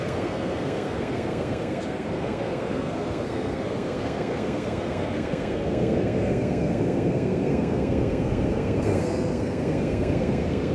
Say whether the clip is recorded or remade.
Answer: remade